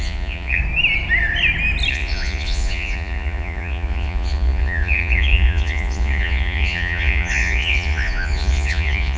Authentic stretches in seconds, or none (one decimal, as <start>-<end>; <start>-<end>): 0.6-1.9